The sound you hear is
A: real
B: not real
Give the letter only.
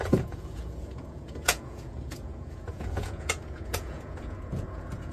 B